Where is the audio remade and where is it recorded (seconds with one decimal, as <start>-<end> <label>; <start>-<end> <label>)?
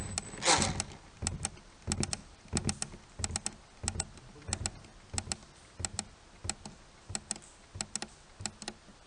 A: 0.0-9.1 recorded